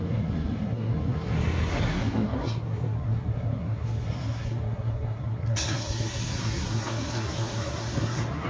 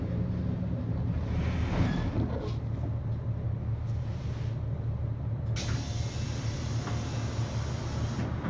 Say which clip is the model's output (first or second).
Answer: first